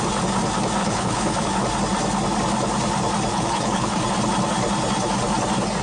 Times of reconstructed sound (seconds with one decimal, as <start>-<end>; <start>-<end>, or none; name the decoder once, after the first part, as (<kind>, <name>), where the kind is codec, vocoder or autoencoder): 0.8-1.4 (codec, HILCodec); 3.3-4.0